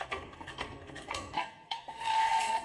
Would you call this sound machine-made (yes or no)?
yes